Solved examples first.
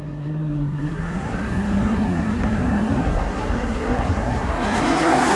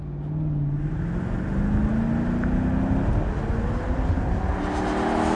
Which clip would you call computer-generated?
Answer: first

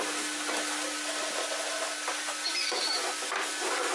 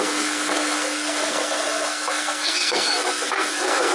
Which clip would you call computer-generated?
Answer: second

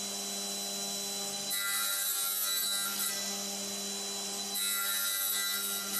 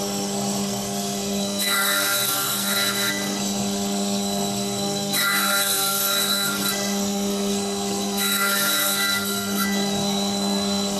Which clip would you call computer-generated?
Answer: second